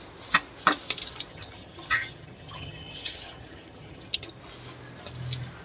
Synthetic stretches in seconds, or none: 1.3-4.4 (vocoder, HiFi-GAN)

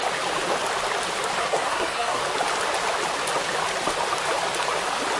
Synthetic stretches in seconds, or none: 1.4-2.2 (codec, SNAC)

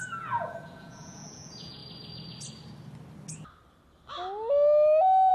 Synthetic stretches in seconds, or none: 0.0-1.8 (vocoder, Vocos)